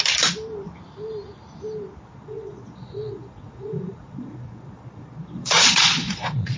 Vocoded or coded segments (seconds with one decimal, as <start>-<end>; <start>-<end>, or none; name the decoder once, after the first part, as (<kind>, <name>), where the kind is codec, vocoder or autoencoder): 2.2-6.6 (vocoder, Vocos)